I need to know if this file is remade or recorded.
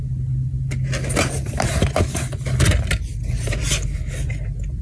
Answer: recorded